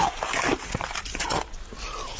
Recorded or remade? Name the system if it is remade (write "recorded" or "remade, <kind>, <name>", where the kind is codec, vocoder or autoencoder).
recorded